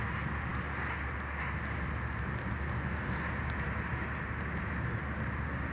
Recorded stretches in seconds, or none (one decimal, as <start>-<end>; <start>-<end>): 0.0-5.7